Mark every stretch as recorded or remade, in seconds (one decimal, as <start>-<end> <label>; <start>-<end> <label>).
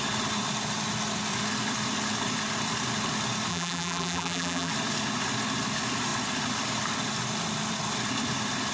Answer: 0.0-3.5 recorded; 3.5-4.7 remade; 4.7-8.7 recorded